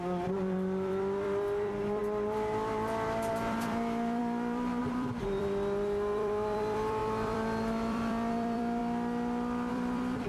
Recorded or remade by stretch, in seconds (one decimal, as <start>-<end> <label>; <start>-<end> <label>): 0.0-2.0 remade; 2.0-3.3 recorded; 3.3-8.8 remade; 8.8-9.7 recorded; 9.7-10.3 remade